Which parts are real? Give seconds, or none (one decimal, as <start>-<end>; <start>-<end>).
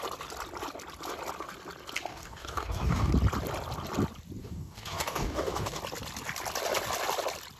0.0-2.1; 3.1-4.4; 5.8-7.6